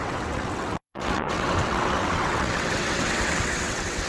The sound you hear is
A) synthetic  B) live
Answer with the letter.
A